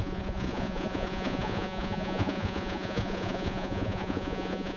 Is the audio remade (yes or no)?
yes